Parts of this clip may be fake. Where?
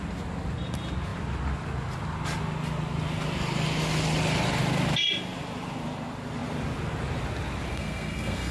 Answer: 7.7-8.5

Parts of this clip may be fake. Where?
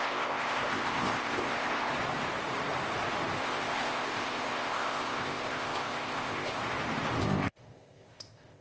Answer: 0.0-1.9; 3.4-6.6; 7.2-8.6